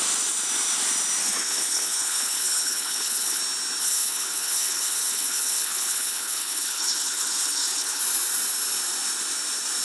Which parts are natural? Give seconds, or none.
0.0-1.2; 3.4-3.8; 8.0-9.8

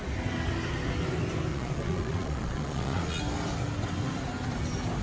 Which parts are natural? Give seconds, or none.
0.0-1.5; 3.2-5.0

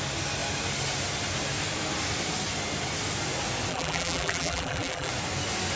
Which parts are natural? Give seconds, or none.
0.0-3.7; 5.1-5.8

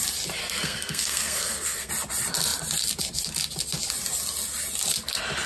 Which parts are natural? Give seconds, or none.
0.0-0.4; 1.9-5.5